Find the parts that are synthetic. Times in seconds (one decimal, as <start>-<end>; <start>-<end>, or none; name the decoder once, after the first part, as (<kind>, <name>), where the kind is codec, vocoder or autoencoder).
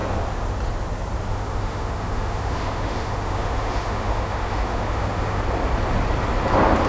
1.3-5.4 (autoencoder, DAC-VAE)